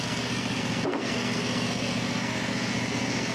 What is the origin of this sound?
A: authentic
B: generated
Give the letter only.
B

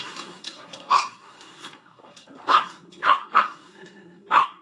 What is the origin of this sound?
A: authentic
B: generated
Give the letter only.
B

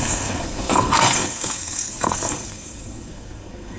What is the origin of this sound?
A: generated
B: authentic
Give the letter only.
A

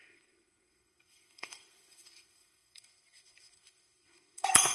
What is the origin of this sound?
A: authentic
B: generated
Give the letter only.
B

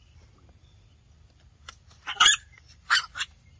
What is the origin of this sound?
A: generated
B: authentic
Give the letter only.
B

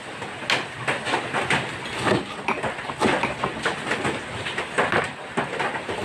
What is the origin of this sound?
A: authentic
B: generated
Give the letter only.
A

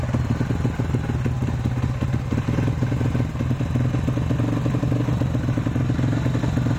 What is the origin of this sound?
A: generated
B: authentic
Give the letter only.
B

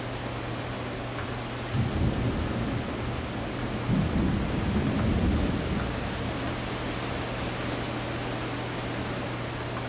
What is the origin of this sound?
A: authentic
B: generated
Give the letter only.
A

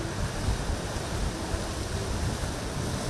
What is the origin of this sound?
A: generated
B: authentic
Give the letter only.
B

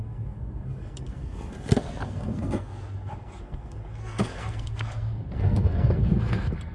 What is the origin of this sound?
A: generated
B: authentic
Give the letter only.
A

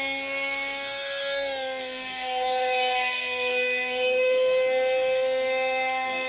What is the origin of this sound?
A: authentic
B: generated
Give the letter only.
B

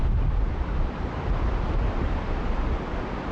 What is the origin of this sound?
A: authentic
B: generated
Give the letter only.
A